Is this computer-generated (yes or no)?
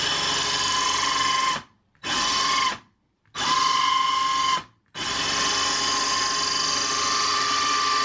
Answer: no